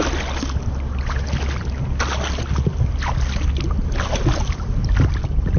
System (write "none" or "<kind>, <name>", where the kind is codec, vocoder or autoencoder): none